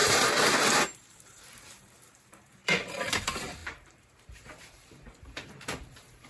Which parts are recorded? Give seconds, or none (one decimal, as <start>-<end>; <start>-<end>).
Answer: none